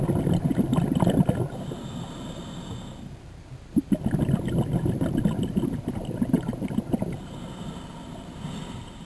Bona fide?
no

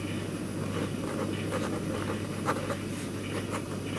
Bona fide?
yes